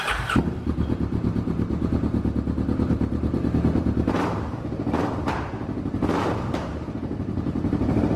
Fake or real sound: fake